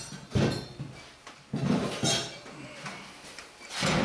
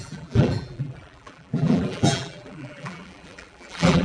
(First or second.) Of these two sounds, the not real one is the second